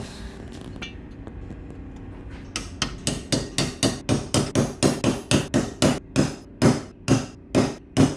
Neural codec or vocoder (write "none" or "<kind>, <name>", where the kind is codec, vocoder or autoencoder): none